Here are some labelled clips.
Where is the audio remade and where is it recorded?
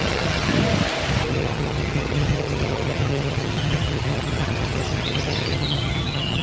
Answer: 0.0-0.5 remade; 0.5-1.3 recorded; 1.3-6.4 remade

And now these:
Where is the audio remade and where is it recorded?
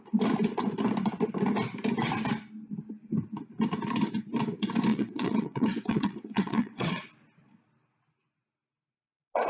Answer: 0.0-4.9 recorded; 4.9-7.0 remade; 7.0-9.5 recorded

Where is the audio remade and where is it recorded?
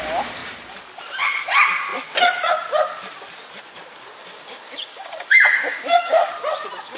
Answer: 0.0-4.2 recorded; 4.2-6.3 remade; 6.3-7.0 recorded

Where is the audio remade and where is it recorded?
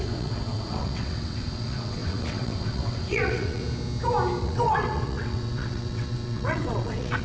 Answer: 0.0-3.6 remade; 3.6-4.4 recorded; 4.4-7.2 remade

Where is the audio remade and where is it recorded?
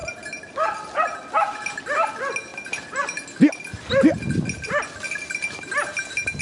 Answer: 0.0-6.4 recorded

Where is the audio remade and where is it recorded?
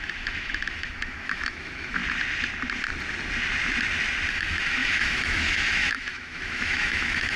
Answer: 0.0-2.0 remade; 2.0-4.3 recorded; 4.3-7.4 remade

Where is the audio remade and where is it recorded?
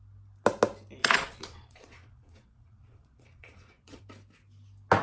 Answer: 0.0-1.0 recorded; 1.0-4.0 remade; 4.0-5.0 recorded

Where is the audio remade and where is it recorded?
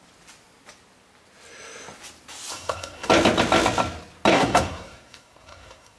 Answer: 0.0-2.5 recorded; 2.5-3.1 remade; 3.1-4.3 recorded; 4.3-6.0 remade